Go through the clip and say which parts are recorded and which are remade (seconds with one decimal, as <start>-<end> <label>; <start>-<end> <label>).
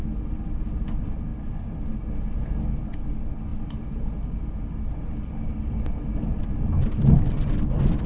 0.0-8.1 recorded